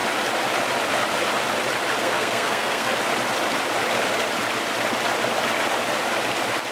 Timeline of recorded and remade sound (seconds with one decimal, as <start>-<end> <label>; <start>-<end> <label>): 0.0-2.0 recorded; 2.0-2.9 remade; 2.9-6.7 recorded